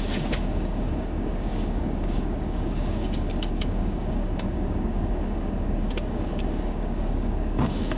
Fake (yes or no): yes